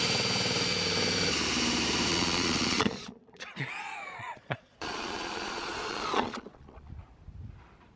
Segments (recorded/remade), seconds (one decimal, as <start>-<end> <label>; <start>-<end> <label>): 0.0-2.1 recorded; 2.1-6.9 remade; 6.9-8.0 recorded

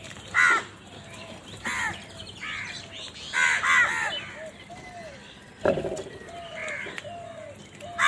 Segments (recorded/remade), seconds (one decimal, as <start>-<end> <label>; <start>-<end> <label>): 0.0-8.1 recorded

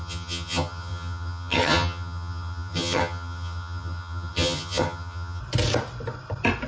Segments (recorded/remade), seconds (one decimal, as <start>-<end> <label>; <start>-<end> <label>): 0.0-5.4 remade; 5.4-6.7 recorded

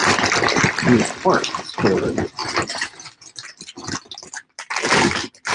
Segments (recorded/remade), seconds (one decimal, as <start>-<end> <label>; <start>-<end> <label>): 0.0-1.7 recorded; 1.7-5.5 remade